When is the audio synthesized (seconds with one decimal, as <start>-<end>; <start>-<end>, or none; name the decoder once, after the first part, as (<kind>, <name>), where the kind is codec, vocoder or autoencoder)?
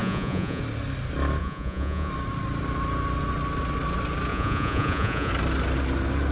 0.0-0.6 (vocoder, Vocos); 1.4-2.1; 4.3-5.3